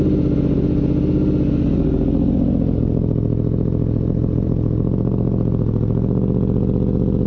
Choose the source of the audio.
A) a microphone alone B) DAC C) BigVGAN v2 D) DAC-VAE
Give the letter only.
A